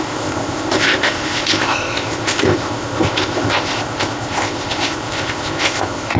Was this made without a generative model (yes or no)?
no